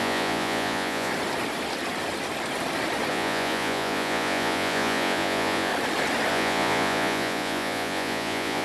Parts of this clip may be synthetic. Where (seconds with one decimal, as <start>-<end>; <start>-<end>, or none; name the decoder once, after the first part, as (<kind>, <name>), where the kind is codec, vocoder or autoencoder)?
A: 0.0-1.1 (vocoder, Vocos); 3.1-5.7; 6.3-8.6

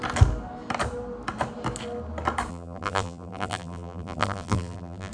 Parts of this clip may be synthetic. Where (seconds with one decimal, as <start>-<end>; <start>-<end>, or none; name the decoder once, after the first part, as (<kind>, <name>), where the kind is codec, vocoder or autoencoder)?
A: 2.5-5.1 (vocoder, BigVGAN v2)